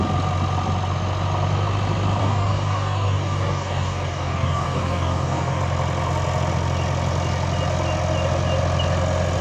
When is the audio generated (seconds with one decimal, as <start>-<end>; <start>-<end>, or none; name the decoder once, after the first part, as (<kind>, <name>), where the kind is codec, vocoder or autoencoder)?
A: 2.2-5.6 (codec, DAC)